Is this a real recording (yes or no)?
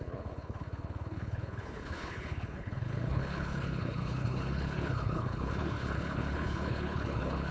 no